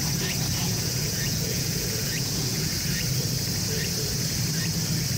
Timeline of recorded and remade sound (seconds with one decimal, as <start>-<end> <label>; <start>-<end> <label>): 0.0-0.6 recorded; 0.6-2.8 remade; 2.8-5.2 recorded